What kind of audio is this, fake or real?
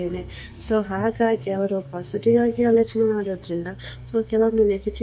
fake